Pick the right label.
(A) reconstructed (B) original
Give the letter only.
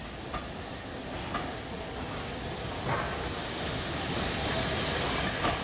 B